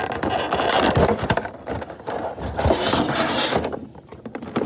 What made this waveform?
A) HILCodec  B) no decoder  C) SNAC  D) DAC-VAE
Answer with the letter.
B